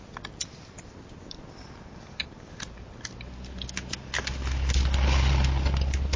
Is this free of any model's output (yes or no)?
yes